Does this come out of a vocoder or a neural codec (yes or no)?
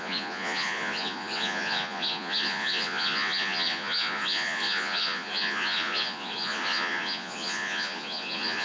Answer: yes